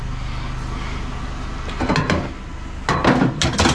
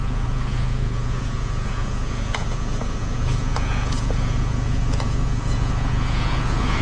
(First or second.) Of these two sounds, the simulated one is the second